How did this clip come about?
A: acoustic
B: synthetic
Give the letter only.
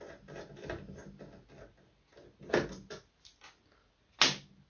A